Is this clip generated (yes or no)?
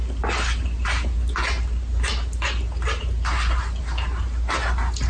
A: no